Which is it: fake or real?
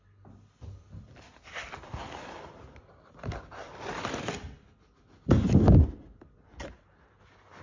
real